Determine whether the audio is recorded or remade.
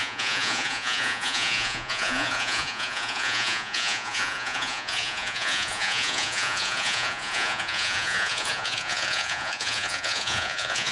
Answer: remade